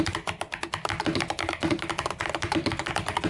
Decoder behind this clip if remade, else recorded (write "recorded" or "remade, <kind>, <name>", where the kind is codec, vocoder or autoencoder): remade, vocoder, BigVGAN v2